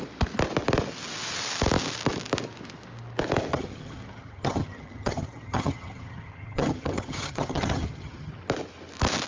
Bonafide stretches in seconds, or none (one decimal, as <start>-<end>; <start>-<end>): 0.0-3.5; 8.3-9.3

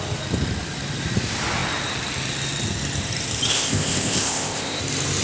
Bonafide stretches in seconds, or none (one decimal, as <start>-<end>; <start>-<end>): 0.0-3.5; 4.8-5.2

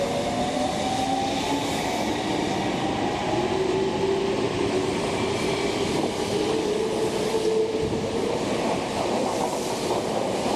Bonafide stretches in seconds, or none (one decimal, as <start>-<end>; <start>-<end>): 0.0-10.6

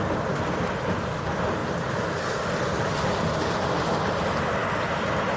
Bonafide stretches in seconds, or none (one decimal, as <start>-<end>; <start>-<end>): 0.0-5.4